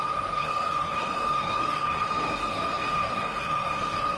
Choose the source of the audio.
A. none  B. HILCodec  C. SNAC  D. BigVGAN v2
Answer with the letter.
C